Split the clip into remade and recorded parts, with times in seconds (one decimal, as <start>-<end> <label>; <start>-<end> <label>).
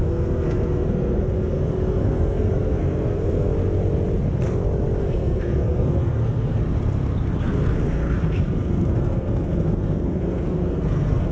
0.0-3.5 remade; 3.5-5.0 recorded; 5.0-6.6 remade; 6.6-7.4 recorded; 7.4-11.3 remade